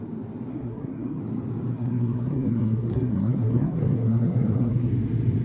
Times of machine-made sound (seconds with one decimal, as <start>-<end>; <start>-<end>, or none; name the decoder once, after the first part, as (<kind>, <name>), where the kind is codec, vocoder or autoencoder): 0.5-1.2 (codec, SNAC); 1.7-4.9